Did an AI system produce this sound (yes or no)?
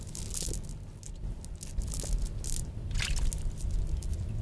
no